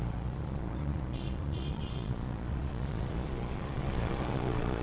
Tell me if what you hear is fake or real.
fake